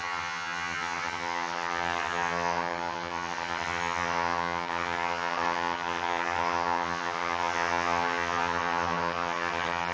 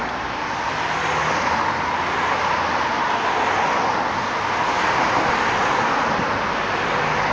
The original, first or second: second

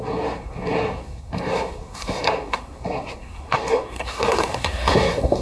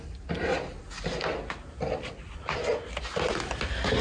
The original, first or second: second